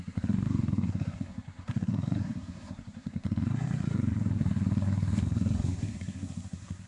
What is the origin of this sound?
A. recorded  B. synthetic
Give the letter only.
B